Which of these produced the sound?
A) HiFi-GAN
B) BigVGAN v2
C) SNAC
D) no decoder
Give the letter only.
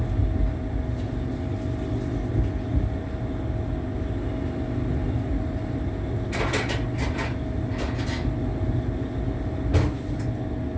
D